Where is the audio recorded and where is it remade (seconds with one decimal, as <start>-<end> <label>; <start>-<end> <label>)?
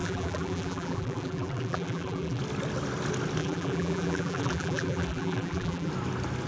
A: 0.0-2.4 remade; 2.4-3.4 recorded; 3.4-5.9 remade; 5.9-6.5 recorded